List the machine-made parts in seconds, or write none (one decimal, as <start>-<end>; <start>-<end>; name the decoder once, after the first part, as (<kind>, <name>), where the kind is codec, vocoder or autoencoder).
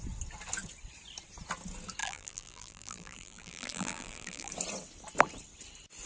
2.0-4.5 (vocoder, BigVGAN v2)